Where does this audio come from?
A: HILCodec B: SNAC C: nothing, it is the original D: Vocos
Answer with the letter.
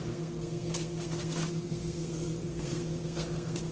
B